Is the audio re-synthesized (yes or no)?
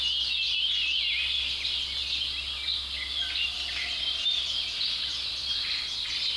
no